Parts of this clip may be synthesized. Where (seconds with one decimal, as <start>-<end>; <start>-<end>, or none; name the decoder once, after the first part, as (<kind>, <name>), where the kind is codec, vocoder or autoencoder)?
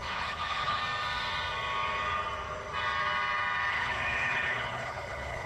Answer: 0.0-0.8 (codec, HILCodec); 3.7-5.5